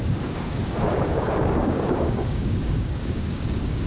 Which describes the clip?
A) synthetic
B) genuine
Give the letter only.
A